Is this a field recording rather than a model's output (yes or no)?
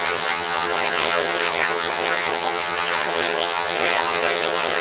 no